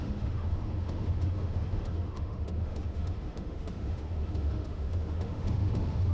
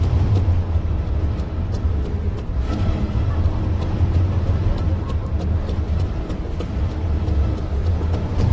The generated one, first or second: first